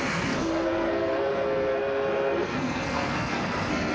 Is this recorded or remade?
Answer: remade